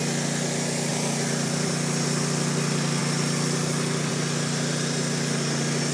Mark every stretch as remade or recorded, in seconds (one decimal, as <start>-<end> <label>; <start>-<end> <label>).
0.0-0.9 recorded; 0.9-1.7 remade; 1.7-5.9 recorded

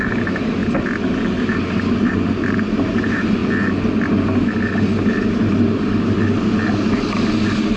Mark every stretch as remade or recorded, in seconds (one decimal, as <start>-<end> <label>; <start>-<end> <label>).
0.0-0.6 remade; 0.6-1.7 recorded; 1.7-3.4 remade; 3.4-7.2 recorded; 7.2-7.8 remade

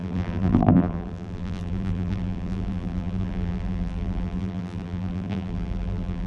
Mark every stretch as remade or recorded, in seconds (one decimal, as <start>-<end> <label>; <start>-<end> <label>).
0.0-6.3 remade